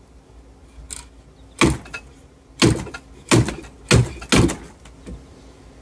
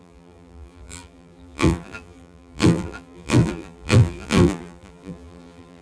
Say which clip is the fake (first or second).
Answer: second